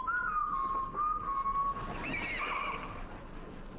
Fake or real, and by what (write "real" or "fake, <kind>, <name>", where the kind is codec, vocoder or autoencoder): real